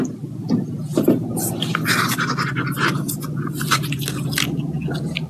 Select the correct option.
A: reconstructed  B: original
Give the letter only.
B